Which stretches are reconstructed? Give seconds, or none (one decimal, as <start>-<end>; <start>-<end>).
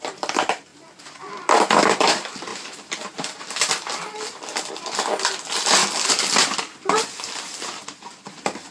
0.0-0.7; 2.0-5.8; 6.6-8.7